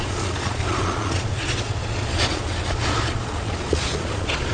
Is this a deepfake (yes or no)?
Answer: yes